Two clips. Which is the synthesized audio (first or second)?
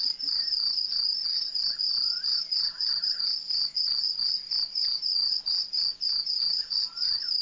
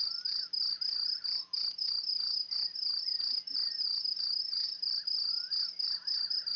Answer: first